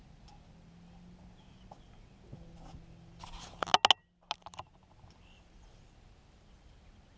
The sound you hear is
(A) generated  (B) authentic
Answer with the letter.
B